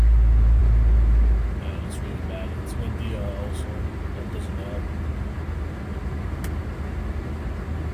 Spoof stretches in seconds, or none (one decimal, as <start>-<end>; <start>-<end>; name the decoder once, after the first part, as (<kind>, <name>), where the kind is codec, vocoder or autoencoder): none